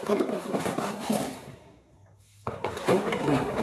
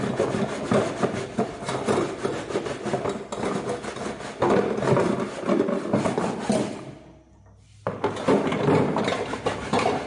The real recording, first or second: second